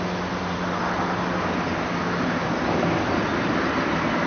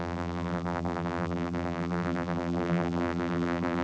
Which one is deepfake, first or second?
second